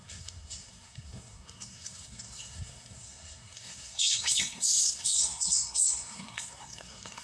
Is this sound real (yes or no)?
no